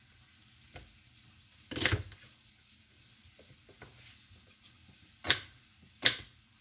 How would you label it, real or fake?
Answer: real